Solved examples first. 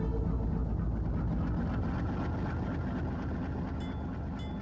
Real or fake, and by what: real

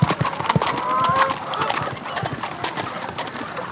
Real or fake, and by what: real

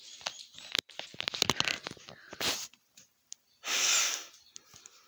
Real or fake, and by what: real